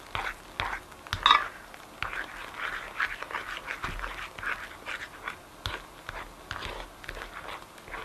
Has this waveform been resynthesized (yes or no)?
no